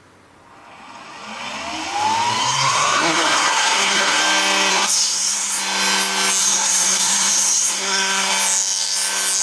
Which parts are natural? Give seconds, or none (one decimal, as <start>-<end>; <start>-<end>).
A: 0.0-2.4; 4.2-4.7; 5.6-6.4; 8.3-9.4